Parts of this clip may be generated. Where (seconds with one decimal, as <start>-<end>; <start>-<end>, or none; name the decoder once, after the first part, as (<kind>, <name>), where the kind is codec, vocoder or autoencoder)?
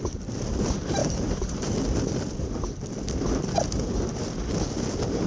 none